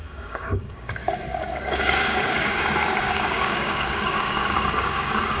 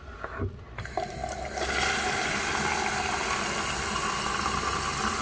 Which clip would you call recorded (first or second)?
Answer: second